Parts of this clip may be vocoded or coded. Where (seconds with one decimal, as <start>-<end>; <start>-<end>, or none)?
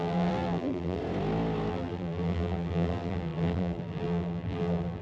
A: 0.0-1.0; 1.7-5.0